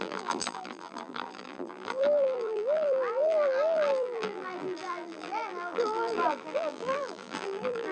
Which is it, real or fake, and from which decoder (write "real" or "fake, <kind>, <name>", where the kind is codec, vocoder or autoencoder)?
fake, vocoder, BigVGAN v2